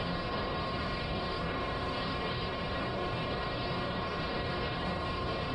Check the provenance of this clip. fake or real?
fake